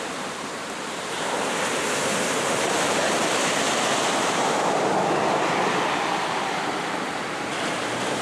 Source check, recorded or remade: remade